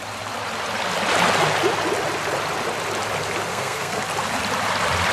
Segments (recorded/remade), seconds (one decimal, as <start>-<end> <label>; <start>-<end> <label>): 0.0-3.5 recorded; 3.5-4.0 remade; 4.0-5.1 recorded